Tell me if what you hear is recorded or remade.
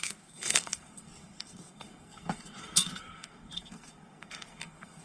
remade